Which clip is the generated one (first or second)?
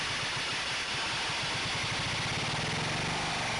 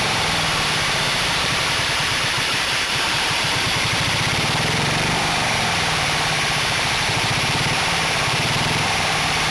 second